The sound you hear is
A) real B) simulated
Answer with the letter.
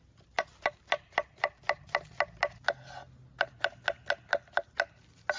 A